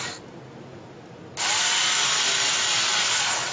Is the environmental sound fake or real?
real